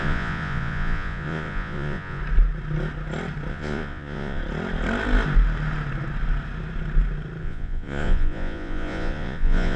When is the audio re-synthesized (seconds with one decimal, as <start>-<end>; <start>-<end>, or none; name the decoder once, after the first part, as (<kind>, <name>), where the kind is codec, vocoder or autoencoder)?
0.0-2.2 (vocoder, Vocos); 3.5-4.4; 7.4-9.8

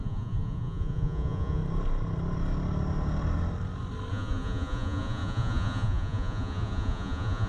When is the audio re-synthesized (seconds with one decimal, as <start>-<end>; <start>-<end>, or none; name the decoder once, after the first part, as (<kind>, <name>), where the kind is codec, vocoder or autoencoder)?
0.0-1.6 (vocoder, Vocos); 4.1-7.5

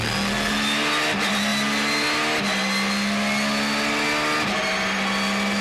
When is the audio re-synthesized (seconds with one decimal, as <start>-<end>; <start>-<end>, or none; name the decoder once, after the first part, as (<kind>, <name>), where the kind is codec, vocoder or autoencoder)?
none